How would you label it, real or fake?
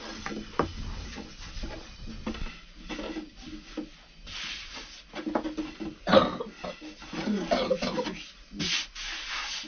real